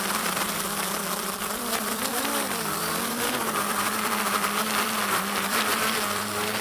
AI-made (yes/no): yes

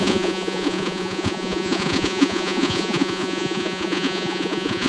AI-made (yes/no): yes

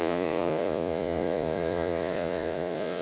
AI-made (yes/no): yes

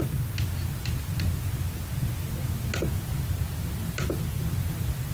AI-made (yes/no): no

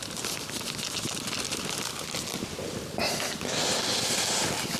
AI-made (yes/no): no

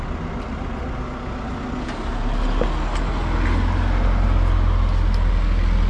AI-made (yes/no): no